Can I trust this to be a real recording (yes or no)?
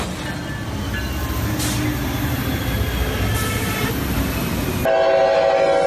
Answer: yes